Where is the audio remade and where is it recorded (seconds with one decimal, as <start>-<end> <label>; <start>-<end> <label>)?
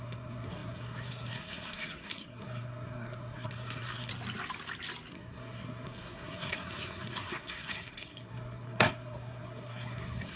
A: 0.0-4.1 remade; 4.1-5.1 recorded; 5.1-10.4 remade